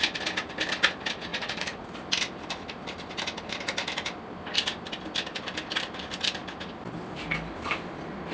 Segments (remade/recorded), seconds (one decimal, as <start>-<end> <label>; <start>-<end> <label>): 0.0-1.3 recorded; 1.3-1.9 remade; 1.9-8.3 recorded